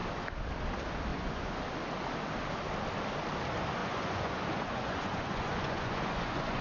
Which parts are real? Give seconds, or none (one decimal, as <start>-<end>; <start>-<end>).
0.0-1.1; 1.6-3.8